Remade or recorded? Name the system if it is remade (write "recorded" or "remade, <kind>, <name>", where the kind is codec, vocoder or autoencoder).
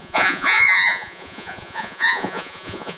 remade, vocoder, Vocos